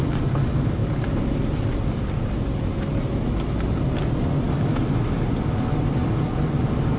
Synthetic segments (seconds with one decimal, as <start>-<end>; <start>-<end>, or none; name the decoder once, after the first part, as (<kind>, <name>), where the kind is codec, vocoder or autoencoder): none